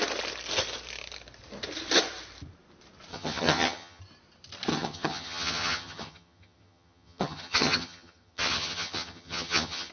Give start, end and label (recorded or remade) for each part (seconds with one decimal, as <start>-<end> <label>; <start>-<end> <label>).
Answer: 0.0-3.1 recorded; 3.1-4.0 remade; 4.0-4.7 recorded; 4.7-9.9 remade